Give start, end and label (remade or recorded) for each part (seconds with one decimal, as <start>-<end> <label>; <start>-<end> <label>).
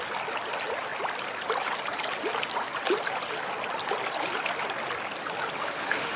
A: 0.0-5.6 recorded; 5.6-6.2 remade